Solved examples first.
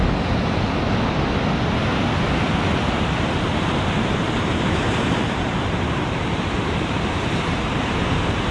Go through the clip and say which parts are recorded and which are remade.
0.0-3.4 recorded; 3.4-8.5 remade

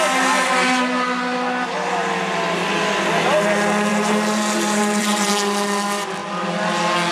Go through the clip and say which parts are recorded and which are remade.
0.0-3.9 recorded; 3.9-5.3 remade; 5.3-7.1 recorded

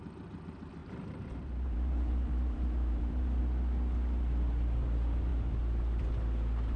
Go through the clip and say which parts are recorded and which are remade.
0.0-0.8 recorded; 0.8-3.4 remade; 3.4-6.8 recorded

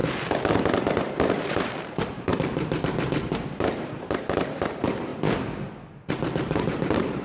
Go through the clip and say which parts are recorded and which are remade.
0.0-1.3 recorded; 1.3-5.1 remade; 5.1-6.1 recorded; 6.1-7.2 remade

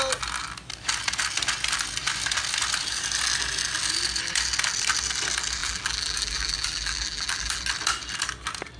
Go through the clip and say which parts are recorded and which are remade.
0.0-5.6 recorded; 5.6-7.6 remade; 7.6-8.8 recorded

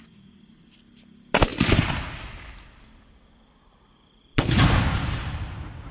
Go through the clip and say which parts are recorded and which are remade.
0.0-1.5 recorded; 1.5-4.7 remade; 4.7-5.9 recorded

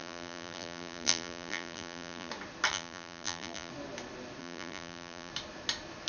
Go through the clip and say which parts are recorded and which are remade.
0.0-2.3 remade; 2.3-2.7 recorded; 2.7-3.7 remade; 3.7-4.4 recorded; 4.4-5.3 remade; 5.3-6.1 recorded

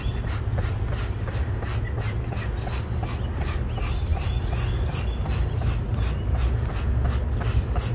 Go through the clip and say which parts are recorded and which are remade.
0.0-7.9 recorded